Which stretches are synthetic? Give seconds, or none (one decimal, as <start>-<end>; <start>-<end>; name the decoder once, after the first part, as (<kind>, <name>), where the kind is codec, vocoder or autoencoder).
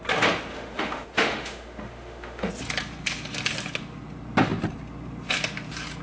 0.5-2.5 (autoencoder, DAC-VAE)